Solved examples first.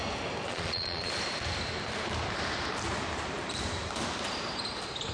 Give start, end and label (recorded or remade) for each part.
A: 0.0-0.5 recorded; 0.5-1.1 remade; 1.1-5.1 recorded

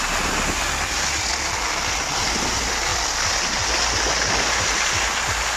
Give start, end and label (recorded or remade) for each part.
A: 0.0-5.6 recorded

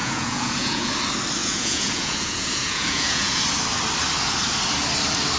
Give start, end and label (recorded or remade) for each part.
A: 0.0-0.9 remade; 0.9-1.4 recorded; 1.4-3.4 remade; 3.4-5.4 recorded

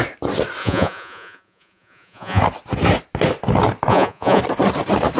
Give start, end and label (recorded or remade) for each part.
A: 0.0-0.6 recorded; 0.6-2.4 remade; 2.4-3.9 recorded; 3.9-4.4 remade; 4.4-5.2 recorded

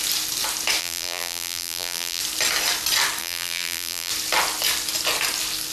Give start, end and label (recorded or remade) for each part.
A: 0.0-0.8 recorded; 0.8-2.2 remade; 2.2-3.2 recorded; 3.2-4.1 remade; 4.1-5.7 recorded

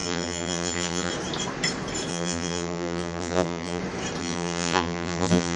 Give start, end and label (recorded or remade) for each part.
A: 0.0-1.1 remade; 1.1-2.1 recorded; 2.1-3.8 remade; 3.8-4.2 recorded; 4.2-5.6 remade